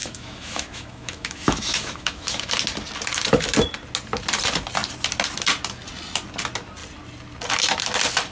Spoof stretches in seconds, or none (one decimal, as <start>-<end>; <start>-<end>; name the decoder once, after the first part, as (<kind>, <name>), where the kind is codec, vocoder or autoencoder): 0.0-2.5 (autoencoder, DAC-VAE)